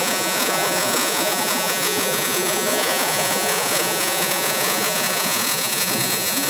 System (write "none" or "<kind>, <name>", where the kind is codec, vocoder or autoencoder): vocoder, Vocos